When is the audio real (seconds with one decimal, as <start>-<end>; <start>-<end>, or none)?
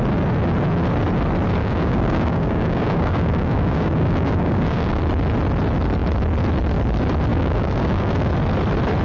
0.0-1.6; 5.0-7.3; 8.3-9.0